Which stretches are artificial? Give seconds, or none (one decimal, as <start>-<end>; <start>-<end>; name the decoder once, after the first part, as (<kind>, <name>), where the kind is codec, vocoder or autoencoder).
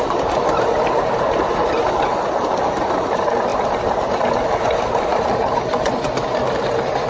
none